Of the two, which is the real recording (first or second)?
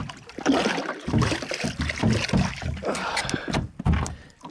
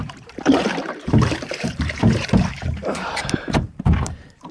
first